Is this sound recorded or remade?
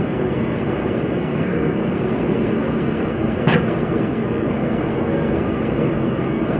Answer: remade